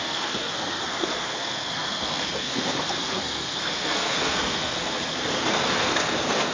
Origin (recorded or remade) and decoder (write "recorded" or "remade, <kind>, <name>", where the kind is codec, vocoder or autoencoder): remade, codec, SNAC